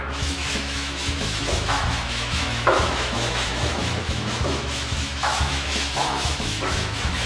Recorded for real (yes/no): no